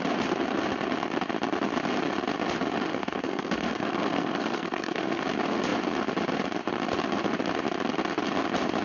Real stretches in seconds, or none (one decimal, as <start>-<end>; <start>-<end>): 0.0-2.9; 5.2-8.8